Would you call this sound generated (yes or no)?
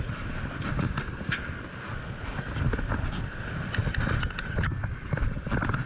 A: no